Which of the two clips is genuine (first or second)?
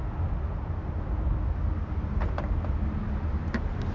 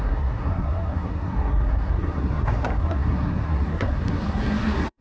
first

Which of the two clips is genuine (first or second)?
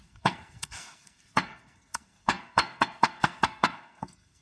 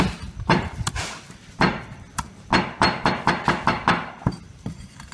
second